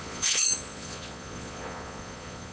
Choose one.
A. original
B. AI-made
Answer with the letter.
B